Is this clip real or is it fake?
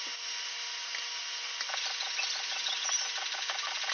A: real